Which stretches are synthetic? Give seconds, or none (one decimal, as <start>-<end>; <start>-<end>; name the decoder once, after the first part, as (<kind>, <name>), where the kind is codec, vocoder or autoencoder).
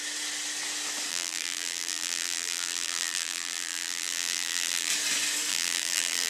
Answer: 1.1-4.9 (vocoder, BigVGAN v2); 5.5-6.3